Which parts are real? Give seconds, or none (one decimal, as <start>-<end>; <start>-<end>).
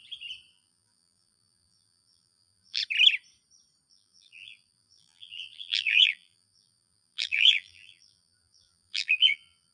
0.0-0.5; 2.8-3.9